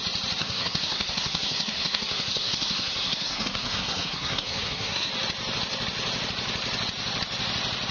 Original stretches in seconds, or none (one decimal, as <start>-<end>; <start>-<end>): 0.0-0.4; 5.1-7.9